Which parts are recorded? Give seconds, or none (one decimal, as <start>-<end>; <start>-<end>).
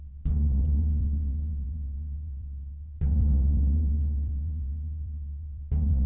none